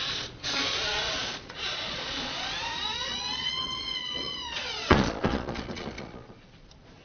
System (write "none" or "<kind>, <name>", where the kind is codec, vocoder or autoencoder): vocoder, Vocos